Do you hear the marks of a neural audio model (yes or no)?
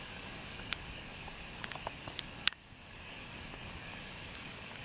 yes